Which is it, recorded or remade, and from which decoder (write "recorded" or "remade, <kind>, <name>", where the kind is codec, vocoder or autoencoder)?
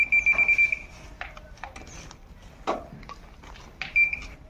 recorded